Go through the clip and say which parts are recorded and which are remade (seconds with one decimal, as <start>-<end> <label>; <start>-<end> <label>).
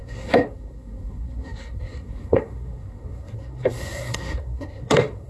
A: 0.0-5.3 remade